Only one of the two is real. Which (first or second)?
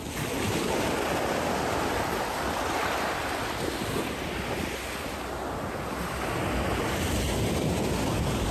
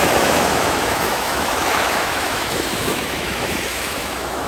first